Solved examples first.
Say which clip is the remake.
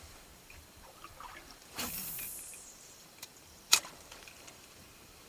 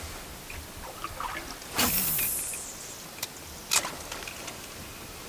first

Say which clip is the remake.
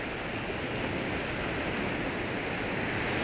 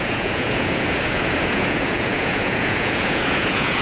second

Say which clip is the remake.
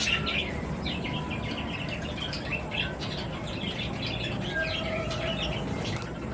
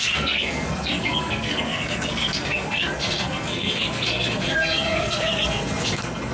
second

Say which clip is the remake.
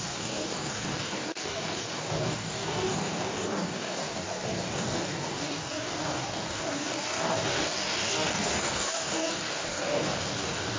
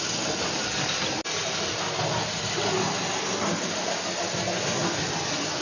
first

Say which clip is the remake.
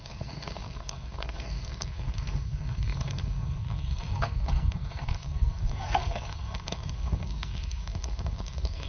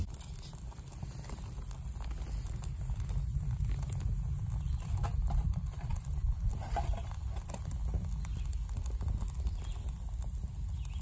first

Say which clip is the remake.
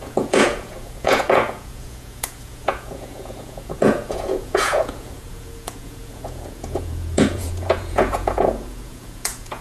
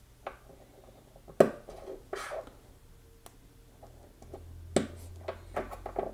first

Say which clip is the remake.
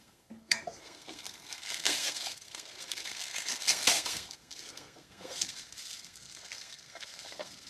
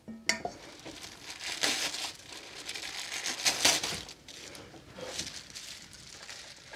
first